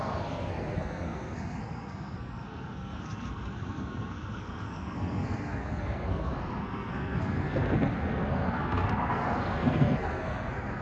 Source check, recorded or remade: remade